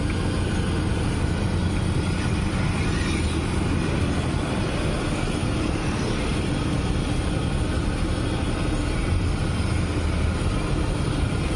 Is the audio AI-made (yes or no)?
no